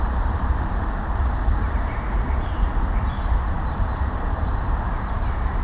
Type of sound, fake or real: fake